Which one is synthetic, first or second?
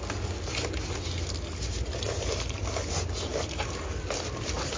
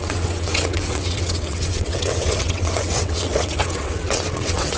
second